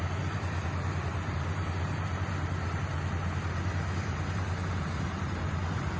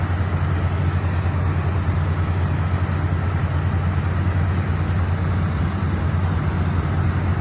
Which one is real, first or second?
second